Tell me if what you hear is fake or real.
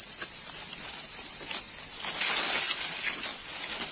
real